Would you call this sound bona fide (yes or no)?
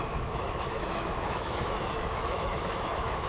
no